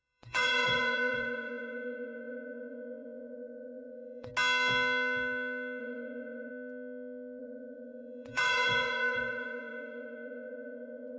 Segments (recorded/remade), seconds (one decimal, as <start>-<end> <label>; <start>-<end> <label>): 0.0-4.3 remade; 4.3-5.8 recorded; 5.8-6.5 remade; 6.5-7.4 recorded; 7.4-11.2 remade